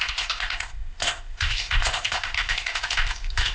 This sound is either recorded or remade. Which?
remade